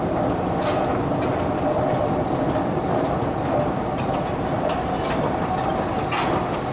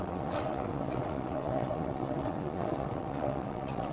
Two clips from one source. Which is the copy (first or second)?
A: second